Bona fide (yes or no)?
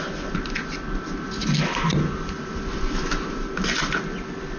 yes